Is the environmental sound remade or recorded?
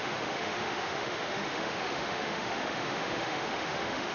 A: remade